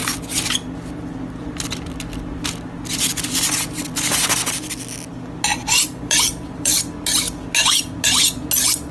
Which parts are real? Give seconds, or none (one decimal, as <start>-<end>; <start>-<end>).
0.0-5.5; 6.8-8.9